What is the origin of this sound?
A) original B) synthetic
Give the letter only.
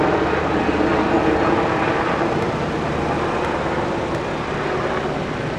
A